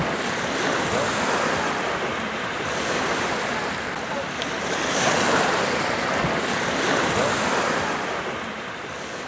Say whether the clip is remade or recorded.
recorded